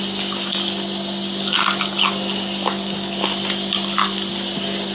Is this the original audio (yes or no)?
yes